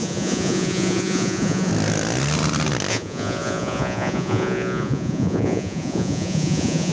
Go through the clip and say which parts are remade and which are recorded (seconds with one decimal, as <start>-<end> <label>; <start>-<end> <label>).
0.0-1.7 remade; 1.7-2.9 recorded; 2.9-6.9 remade